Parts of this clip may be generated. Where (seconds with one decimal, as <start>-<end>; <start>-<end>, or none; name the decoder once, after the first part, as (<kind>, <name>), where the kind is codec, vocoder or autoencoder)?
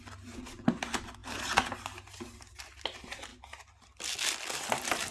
none